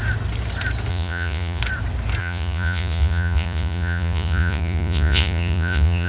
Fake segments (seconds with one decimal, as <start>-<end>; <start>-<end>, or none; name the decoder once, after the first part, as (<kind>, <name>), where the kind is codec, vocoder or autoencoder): 0.9-1.6 (vocoder, Vocos); 2.2-6.1